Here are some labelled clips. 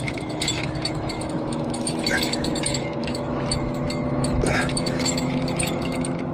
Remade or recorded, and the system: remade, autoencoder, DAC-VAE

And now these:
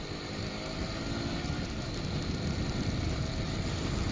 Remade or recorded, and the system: recorded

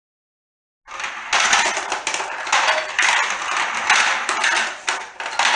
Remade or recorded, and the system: recorded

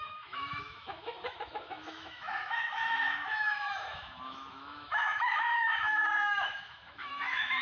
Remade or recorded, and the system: remade, autoencoder, DAC-VAE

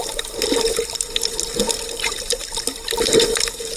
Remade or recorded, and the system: recorded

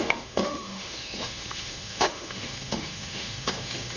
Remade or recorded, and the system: remade, autoencoder, DAC-VAE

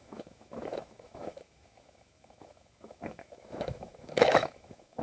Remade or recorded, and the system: remade, autoencoder, DAC-VAE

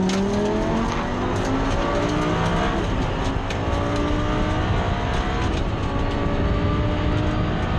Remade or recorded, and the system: recorded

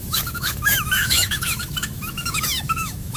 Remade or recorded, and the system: remade, autoencoder, DAC-VAE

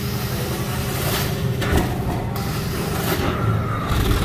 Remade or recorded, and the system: recorded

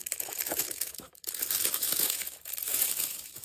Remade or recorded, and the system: remade, autoencoder, DAC-VAE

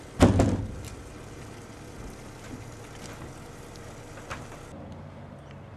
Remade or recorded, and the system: recorded